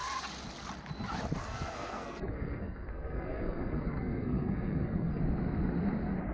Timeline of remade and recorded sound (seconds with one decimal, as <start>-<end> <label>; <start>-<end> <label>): 0.0-1.4 recorded; 1.4-5.2 remade; 5.2-6.3 recorded